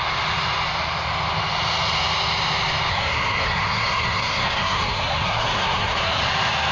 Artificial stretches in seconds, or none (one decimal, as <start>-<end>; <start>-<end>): 2.9-6.2